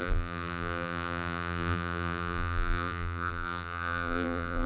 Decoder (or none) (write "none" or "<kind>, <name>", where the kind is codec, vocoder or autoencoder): vocoder, BigVGAN v2